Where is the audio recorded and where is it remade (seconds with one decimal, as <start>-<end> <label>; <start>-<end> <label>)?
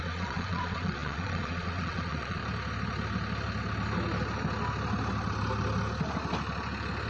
0.0-2.4 remade; 2.4-7.1 recorded